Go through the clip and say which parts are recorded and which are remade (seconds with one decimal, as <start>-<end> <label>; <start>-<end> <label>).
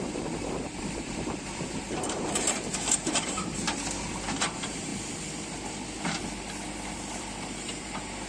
0.0-4.9 remade; 4.9-6.9 recorded; 6.9-8.3 remade